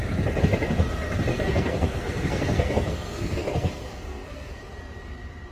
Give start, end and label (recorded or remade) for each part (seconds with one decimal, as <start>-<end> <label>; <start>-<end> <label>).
0.0-1.3 recorded; 1.3-4.6 remade; 4.6-5.5 recorded